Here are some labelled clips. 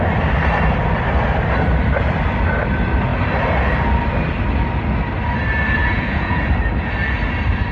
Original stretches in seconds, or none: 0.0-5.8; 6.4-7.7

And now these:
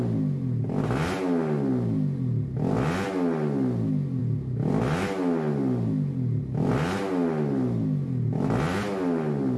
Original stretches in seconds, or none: 0.0-9.6